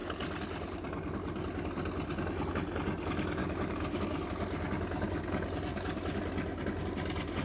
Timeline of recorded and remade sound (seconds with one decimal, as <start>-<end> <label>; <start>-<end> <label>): 0.0-3.4 recorded; 3.4-4.3 remade; 4.3-7.4 recorded